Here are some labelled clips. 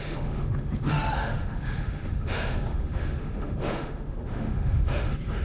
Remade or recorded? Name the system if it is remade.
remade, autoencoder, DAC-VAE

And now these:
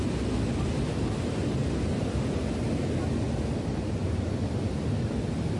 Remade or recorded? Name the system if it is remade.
recorded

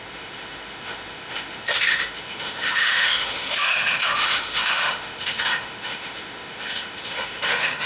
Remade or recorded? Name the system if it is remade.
remade, autoencoder, DAC-VAE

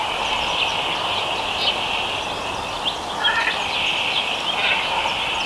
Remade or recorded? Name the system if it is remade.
recorded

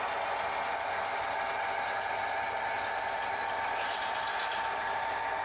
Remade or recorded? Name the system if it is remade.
recorded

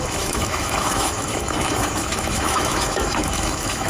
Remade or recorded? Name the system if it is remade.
remade, autoencoder, DAC-VAE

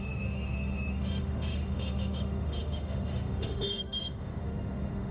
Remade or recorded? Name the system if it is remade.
remade, autoencoder, DAC-VAE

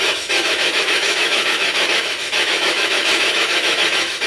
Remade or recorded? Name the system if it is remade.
remade, autoencoder, DAC-VAE